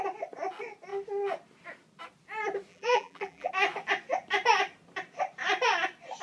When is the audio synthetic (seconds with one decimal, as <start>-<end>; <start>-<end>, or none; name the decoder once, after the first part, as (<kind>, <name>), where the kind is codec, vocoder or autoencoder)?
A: 2.7-3.5 (vocoder, BigVGAN v2)

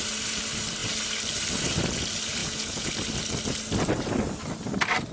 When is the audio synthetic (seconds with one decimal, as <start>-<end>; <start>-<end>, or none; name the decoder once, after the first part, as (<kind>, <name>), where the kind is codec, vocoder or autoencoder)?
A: 2.4-2.9 (vocoder, Vocos)